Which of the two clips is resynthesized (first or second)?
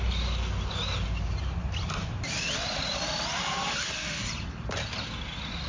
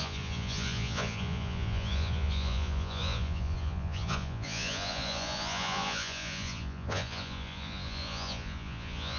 second